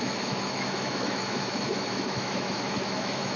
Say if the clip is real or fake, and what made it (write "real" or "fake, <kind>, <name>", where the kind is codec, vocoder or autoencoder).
fake, autoencoder, DAC-VAE